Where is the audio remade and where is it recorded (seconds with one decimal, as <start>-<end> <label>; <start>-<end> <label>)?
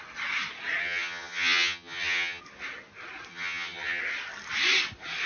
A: 0.0-0.8 recorded; 0.8-2.4 remade; 2.4-3.3 recorded; 3.3-4.0 remade; 4.0-5.3 recorded